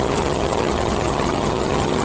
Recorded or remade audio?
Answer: remade